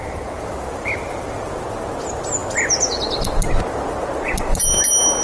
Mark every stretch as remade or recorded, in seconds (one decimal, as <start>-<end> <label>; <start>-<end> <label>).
0.0-5.2 recorded

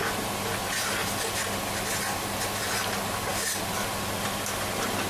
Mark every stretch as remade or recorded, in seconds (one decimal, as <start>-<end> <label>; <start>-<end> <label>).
0.0-5.1 recorded

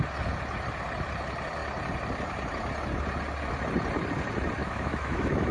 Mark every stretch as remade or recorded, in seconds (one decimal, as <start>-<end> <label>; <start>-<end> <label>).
0.0-4.6 recorded; 4.6-5.5 remade

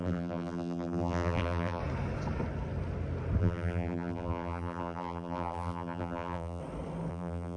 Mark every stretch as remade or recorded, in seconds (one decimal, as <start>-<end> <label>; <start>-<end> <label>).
0.0-1.8 remade; 1.8-3.4 recorded; 3.4-6.6 remade; 6.6-7.1 recorded; 7.1-7.6 remade

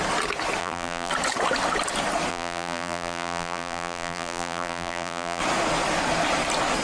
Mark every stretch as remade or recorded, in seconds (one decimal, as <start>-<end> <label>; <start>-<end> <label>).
0.0-0.6 recorded; 0.6-1.1 remade; 1.1-2.3 recorded; 2.3-5.4 remade; 5.4-6.8 recorded

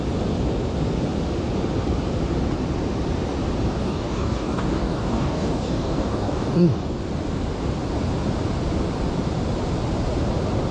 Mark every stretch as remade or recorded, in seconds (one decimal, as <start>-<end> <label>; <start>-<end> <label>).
0.0-3.8 recorded; 3.8-7.0 remade; 7.0-10.7 recorded

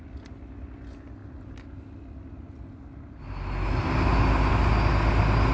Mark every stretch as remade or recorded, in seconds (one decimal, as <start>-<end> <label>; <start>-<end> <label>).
0.0-5.5 recorded